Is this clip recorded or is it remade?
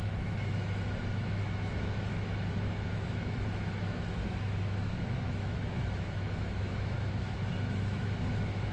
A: remade